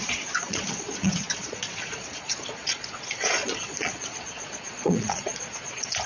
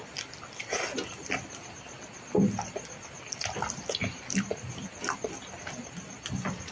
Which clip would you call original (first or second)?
second